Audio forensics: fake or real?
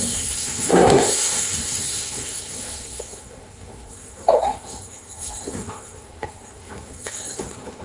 fake